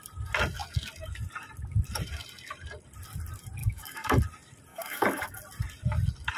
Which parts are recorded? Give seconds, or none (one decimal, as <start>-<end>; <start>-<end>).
0.0-3.6; 4.2-4.7; 5.4-6.4

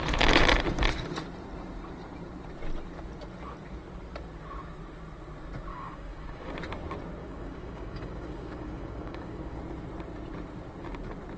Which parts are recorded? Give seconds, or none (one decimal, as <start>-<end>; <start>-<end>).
0.0-5.7; 6.5-7.2; 9.6-11.4

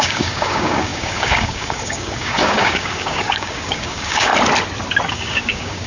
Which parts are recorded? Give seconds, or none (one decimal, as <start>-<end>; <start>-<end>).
4.3-5.1

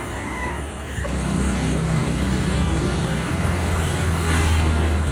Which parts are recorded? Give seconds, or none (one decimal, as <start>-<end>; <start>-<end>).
none

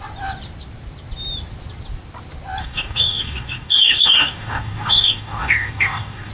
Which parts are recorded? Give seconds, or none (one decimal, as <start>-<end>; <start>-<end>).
0.0-2.6

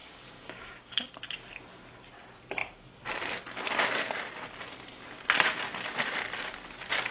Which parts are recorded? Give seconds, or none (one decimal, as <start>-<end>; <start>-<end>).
1.1-7.1

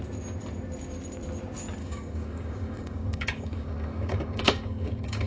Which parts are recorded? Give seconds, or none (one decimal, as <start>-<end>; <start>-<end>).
0.0-1.8

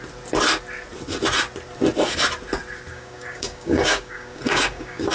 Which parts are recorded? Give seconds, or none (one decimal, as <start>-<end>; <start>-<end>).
0.0-2.9